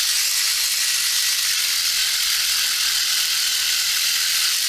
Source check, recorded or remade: recorded